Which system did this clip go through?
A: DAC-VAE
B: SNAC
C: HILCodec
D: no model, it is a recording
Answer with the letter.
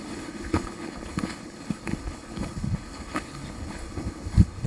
C